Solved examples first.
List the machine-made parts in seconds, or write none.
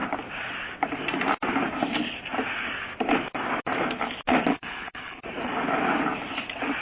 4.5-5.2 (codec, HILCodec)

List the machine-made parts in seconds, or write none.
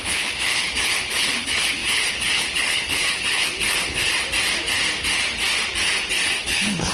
0.0-4.1 (codec, HILCodec); 6.4-6.9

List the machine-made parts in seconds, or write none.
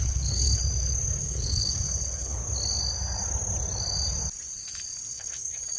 0.0-0.6 (codec, HILCodec); 1.2-2.4; 5.1-5.8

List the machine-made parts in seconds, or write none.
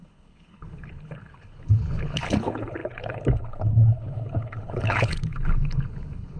0.0-6.4 (codec, HILCodec)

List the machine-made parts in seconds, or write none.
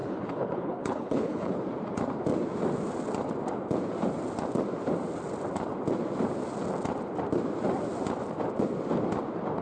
0.0-1.6 (codec, HILCodec)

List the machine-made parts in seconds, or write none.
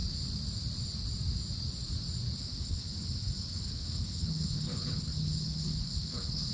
2.4-6.5 (codec, HILCodec)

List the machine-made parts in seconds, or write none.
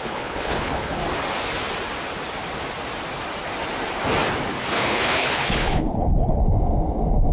0.0-1.0 (codec, HILCodec); 4.7-6.4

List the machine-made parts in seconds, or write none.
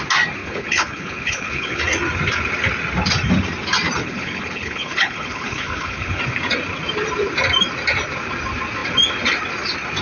0.4-1.8 (codec, HILCodec); 4.0-6.2